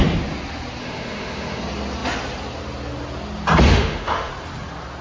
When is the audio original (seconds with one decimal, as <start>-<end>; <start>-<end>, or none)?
0.0-0.8; 1.6-3.7; 4.3-5.0